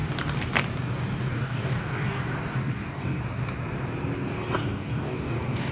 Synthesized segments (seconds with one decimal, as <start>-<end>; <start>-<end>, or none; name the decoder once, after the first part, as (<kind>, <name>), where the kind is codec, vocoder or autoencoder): 1.3-2.2 (codec, DAC); 2.6-3.2; 4.6-5.7

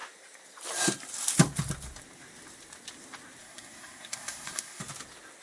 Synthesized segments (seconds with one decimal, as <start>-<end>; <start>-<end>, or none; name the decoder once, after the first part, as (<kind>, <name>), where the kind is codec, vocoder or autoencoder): 3.4-4.8 (codec, SNAC)

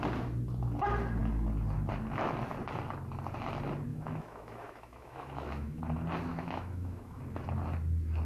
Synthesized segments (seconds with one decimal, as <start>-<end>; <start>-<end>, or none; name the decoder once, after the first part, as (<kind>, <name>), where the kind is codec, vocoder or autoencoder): 3.9-5.8 (autoencoder, DAC-VAE); 6.3-7.2